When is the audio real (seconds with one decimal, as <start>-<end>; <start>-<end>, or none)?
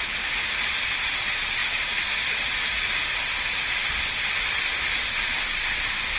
0.0-6.2